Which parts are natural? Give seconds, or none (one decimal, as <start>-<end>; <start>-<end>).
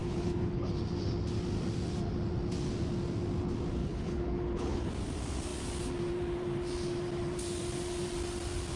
0.7-3.8; 4.9-8.8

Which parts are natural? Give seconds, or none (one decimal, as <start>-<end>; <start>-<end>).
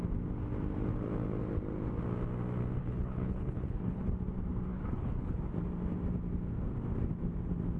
0.0-2.8; 4.0-4.7; 5.4-7.8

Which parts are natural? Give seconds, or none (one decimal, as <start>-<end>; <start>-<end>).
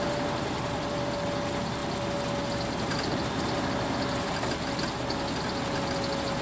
0.0-6.4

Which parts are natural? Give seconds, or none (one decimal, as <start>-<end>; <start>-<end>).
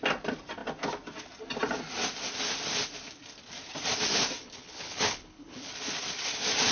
0.0-4.4; 5.7-6.7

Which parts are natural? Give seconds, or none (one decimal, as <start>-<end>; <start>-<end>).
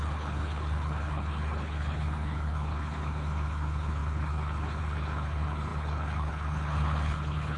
none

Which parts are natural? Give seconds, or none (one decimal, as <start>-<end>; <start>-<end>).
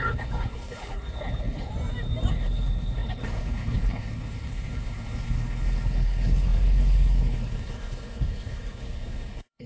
1.7-2.3